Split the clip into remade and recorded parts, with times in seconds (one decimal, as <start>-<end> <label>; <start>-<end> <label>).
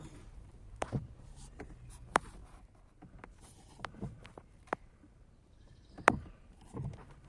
0.0-2.4 remade; 2.4-3.7 recorded; 3.7-7.3 remade